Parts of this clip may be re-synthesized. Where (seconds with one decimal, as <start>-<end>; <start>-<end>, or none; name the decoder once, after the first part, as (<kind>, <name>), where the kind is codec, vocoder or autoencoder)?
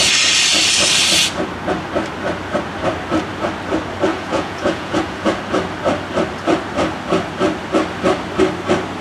4.1-5.4 (vocoder, Vocos)